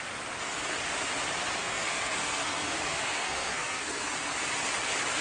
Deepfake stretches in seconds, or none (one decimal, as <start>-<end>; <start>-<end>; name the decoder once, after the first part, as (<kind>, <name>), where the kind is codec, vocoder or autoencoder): 1.6-4.3 (codec, SNAC)